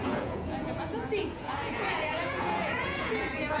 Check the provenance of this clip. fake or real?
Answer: fake